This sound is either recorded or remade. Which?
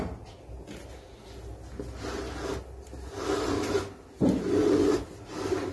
recorded